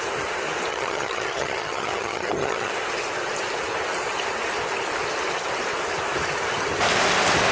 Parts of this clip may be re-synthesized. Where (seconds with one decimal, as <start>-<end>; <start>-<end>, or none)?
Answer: 0.7-2.7